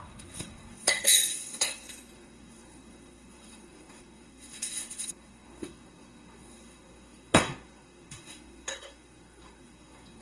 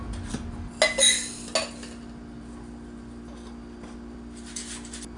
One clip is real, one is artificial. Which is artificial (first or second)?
first